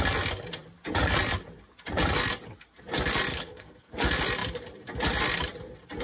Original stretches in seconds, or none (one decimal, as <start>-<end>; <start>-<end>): 0.0-3.3; 3.9-6.0